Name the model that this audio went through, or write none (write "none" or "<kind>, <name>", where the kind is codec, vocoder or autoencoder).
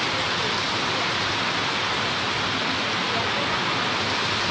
none